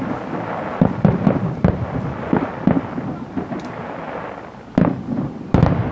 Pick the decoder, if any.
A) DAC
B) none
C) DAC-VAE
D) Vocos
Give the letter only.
B